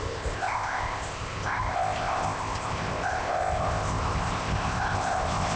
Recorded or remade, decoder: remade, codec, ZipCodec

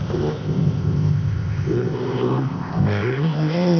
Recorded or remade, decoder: remade, codec, ZipCodec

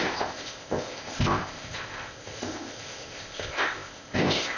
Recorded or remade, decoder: remade, codec, ZipCodec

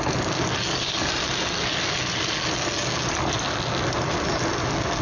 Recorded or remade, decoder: recorded